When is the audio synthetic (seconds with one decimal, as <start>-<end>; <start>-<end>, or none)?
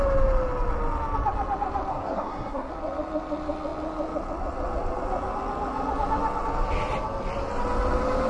1.9-2.7